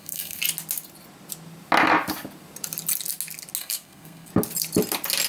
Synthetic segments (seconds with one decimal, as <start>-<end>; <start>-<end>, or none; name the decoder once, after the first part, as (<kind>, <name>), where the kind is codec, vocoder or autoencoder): 0.0-0.4 (codec, SNAC); 3.6-4.3